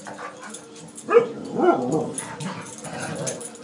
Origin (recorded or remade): recorded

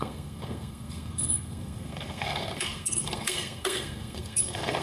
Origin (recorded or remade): remade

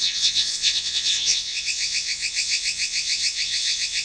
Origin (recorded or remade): remade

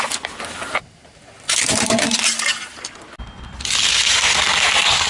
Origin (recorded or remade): recorded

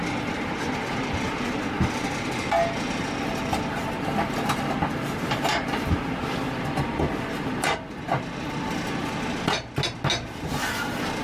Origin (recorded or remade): recorded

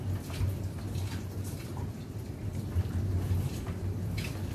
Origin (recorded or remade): recorded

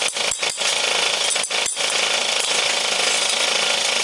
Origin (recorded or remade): recorded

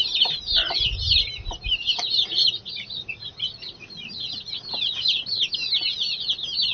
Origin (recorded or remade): recorded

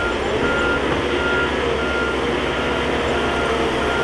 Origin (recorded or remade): recorded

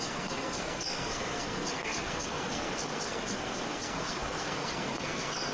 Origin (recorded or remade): remade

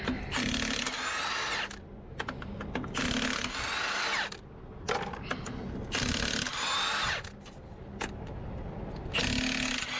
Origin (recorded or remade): recorded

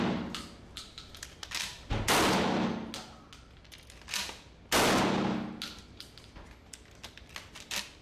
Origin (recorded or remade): recorded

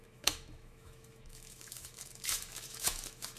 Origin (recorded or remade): remade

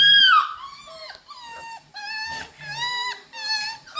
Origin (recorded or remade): recorded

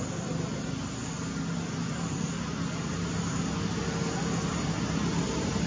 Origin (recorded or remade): recorded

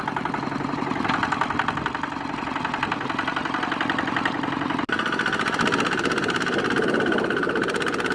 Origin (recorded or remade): recorded